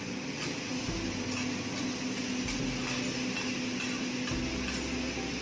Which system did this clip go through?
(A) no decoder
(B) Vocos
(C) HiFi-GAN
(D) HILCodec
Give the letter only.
A